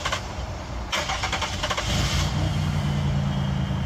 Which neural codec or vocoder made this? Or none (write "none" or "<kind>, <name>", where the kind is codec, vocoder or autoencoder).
none